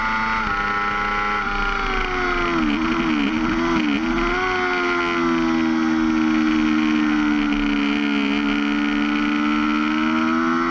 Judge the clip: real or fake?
real